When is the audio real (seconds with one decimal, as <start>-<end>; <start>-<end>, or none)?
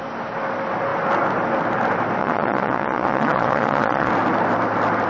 0.0-2.2; 4.1-5.1